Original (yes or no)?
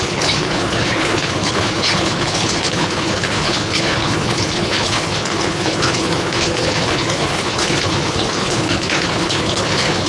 no